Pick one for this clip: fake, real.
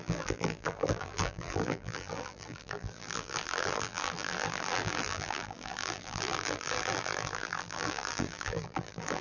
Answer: fake